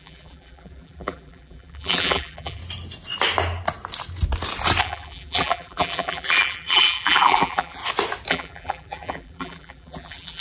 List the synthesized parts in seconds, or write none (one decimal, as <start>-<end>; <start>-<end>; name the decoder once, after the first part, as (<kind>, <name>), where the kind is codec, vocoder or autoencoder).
0.0-2.6 (vocoder, BigVGAN v2); 4.8-7.8; 8.3-10.4